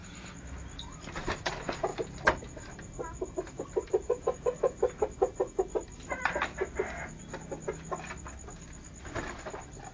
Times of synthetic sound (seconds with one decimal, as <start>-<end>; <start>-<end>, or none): none